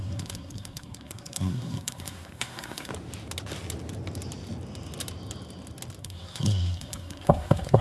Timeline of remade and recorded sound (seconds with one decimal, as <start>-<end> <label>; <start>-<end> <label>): 0.0-2.9 remade; 2.9-6.0 recorded; 6.0-7.8 remade